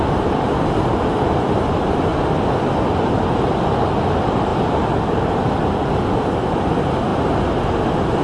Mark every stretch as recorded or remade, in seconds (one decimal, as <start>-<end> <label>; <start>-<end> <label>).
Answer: 0.0-2.1 remade; 2.1-3.6 recorded; 3.6-4.5 remade; 4.5-5.6 recorded; 5.6-8.2 remade